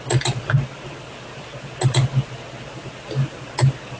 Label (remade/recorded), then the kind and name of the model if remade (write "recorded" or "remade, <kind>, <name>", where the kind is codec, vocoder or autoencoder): recorded